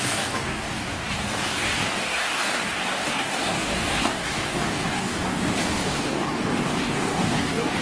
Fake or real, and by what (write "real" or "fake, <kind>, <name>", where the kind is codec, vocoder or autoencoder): fake, codec, DAC